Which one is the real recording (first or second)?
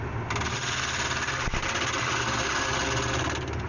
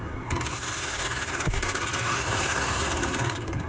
first